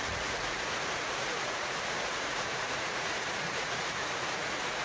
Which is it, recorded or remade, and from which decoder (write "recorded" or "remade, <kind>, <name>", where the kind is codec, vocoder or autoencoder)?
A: remade, vocoder, Vocos